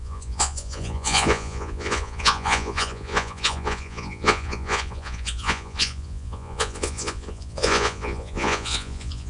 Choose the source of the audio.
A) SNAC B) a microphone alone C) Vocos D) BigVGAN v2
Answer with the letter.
C